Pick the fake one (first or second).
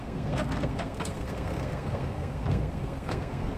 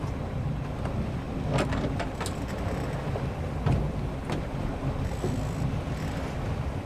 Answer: first